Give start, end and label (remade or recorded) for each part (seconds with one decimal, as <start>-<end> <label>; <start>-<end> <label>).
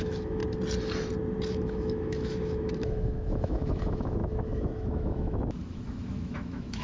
0.0-0.4 remade; 0.4-1.5 recorded; 1.5-6.8 remade